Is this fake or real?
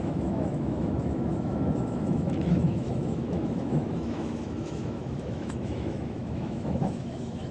fake